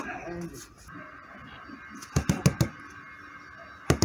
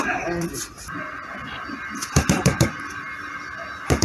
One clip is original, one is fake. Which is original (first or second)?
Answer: first